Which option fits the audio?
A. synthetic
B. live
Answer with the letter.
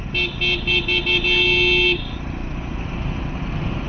B